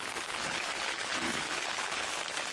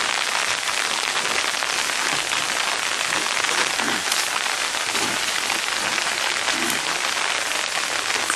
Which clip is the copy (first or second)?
first